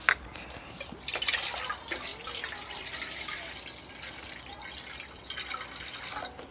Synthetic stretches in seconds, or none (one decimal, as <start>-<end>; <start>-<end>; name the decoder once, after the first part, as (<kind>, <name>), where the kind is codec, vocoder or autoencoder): none